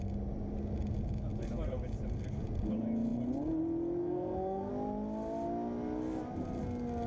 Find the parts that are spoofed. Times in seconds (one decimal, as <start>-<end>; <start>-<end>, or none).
4.0-4.7